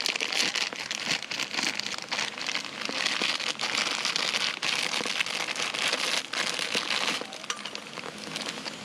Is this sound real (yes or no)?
yes